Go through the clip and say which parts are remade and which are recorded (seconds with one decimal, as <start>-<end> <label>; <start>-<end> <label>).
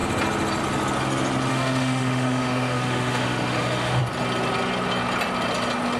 0.0-1.5 recorded; 1.5-4.0 remade; 4.0-6.0 recorded